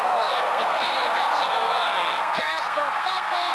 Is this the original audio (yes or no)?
no